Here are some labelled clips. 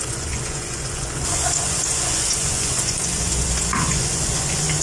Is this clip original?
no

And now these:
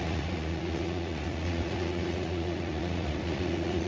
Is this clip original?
no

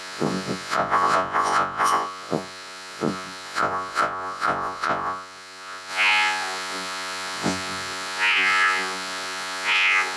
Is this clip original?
no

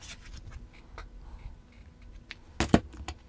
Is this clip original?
yes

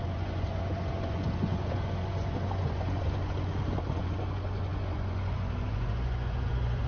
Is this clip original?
no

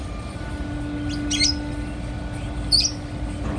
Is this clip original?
yes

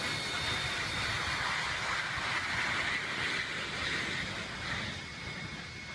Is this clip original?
yes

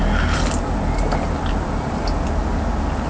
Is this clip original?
yes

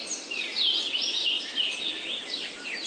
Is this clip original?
yes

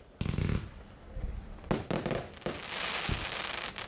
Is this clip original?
yes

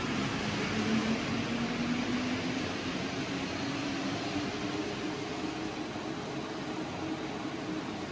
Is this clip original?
yes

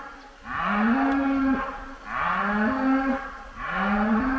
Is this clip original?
yes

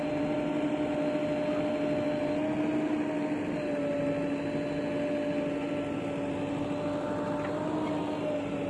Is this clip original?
yes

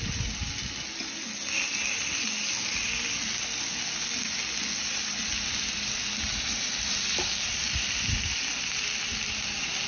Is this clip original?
yes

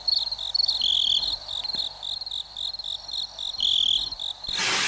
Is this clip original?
yes